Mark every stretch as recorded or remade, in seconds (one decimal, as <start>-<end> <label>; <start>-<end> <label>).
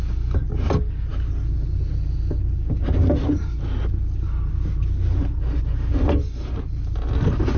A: 0.0-7.6 recorded